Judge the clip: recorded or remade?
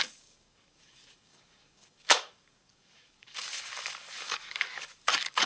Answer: remade